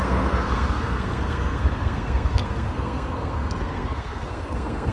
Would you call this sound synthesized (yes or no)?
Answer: yes